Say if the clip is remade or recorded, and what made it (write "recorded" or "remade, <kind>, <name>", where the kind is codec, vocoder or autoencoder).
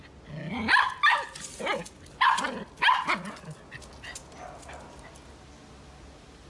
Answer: recorded